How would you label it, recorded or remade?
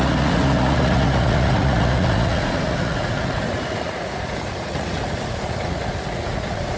remade